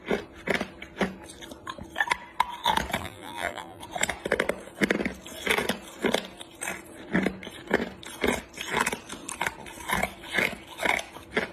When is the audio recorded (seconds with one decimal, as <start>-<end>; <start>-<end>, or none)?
0.0-3.0; 3.8-11.5